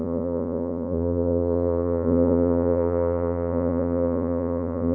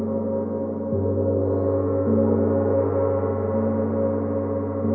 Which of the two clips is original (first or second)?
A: second